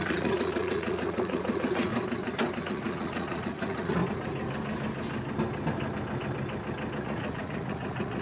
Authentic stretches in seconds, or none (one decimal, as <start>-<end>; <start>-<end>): 1.9-2.6; 4.0-7.0